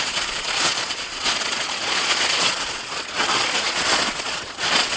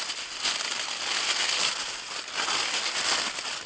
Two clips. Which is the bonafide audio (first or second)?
second